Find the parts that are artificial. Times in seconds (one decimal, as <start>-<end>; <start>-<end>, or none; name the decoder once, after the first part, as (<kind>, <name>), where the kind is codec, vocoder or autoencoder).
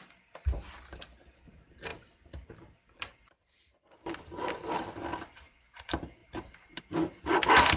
3.4-4.8 (vocoder, BigVGAN v2); 6.2-6.8